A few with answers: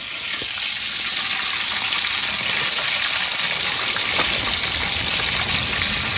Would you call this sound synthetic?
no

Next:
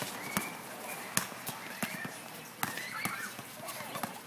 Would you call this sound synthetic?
no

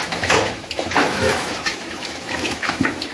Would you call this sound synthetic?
yes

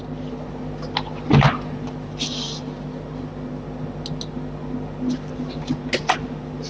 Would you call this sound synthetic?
no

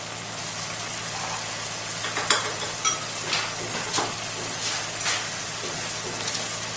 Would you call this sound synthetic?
no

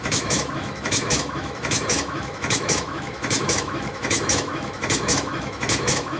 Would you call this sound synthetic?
yes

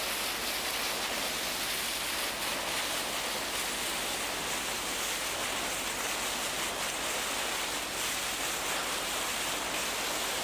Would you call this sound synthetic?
no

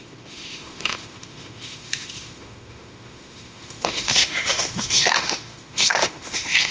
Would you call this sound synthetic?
yes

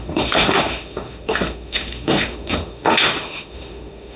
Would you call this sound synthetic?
yes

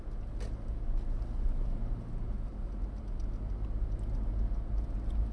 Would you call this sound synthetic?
no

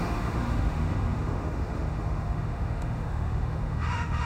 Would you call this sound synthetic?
yes